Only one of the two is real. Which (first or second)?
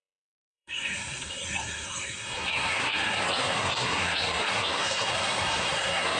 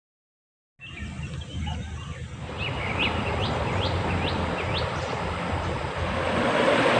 second